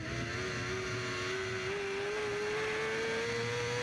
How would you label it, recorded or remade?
recorded